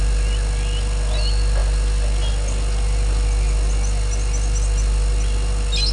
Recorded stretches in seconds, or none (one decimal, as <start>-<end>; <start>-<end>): 0.0-5.9